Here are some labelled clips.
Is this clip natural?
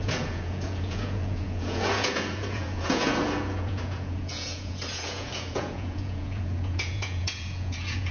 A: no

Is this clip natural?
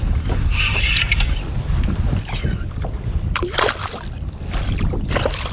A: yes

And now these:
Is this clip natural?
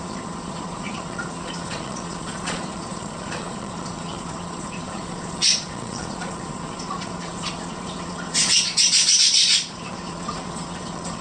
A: no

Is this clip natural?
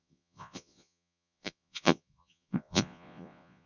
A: no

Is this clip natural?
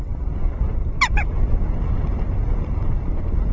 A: yes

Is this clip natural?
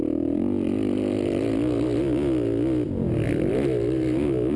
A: yes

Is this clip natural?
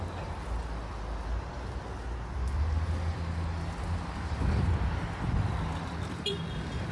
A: yes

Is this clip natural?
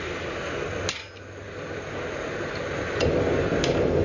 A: yes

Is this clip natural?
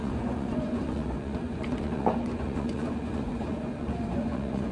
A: no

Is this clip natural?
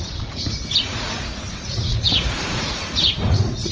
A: no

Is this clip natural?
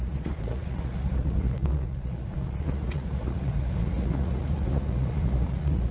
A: no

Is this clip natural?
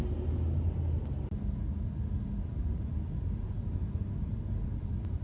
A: yes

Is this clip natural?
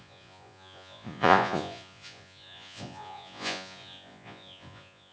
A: no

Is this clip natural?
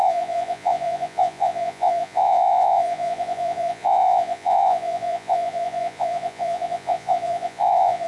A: no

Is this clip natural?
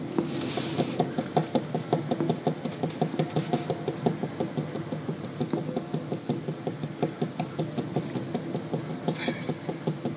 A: yes